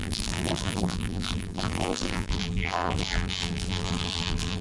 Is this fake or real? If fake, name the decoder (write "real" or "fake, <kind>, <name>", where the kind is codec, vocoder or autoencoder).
fake, vocoder, BigVGAN v2